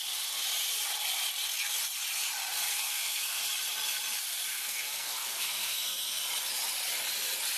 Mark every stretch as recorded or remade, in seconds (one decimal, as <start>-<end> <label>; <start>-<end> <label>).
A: 0.0-2.7 recorded; 2.7-3.4 remade; 3.4-4.5 recorded; 4.5-6.2 remade; 6.2-7.6 recorded